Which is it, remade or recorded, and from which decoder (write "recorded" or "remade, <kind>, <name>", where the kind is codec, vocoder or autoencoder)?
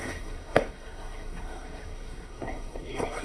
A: remade, codec, SNAC